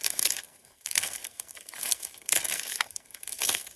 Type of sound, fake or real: fake